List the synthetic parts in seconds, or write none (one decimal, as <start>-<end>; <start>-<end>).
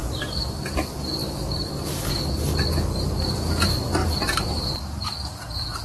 1.2-2.1; 4.0-4.8